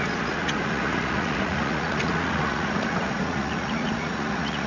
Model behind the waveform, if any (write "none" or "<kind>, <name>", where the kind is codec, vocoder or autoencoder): vocoder, Vocos